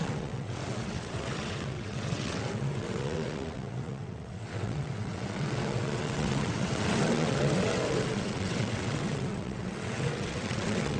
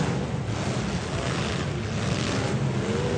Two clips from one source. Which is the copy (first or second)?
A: first